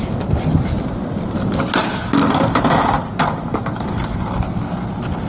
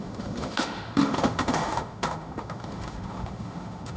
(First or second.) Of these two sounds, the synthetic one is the second